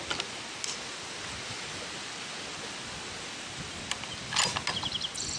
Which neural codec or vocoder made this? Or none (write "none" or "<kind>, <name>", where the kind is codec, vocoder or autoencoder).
none